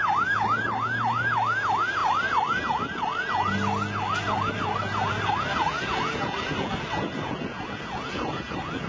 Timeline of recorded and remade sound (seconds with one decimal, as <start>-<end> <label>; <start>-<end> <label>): 0.0-8.9 recorded